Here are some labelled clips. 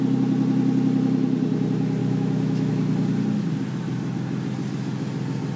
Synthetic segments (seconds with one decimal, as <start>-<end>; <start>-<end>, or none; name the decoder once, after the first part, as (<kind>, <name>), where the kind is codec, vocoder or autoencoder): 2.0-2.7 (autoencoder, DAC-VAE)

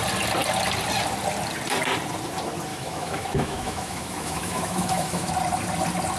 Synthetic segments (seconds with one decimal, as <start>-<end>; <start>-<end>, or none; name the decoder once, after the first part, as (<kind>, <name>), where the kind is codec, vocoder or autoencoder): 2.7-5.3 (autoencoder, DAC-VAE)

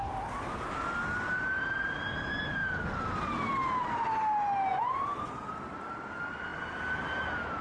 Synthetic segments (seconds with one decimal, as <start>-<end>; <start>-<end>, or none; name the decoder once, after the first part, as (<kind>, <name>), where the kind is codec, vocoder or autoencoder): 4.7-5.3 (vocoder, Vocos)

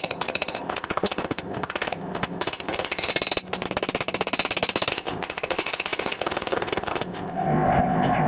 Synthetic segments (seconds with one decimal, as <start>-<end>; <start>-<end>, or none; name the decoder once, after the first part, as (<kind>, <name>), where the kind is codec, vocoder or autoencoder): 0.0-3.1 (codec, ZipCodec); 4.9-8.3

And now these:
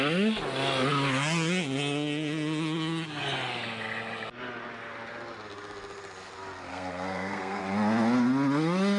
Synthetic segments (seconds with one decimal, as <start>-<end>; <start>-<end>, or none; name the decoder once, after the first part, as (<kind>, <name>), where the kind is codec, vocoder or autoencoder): 6.7-7.6 (codec, SNAC)

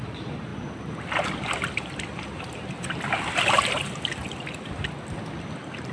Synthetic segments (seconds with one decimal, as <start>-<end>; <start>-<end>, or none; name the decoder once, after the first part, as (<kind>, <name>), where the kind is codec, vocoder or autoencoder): none

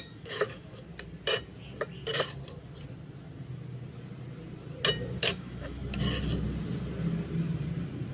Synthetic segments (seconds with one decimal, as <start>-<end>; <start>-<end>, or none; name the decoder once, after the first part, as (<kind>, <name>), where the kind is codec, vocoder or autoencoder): 0.0-0.9 (autoencoder, DAC-VAE); 5.2-5.8